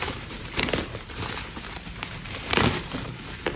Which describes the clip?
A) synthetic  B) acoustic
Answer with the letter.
A